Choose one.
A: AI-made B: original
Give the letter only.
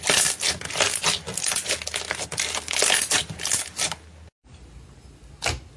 B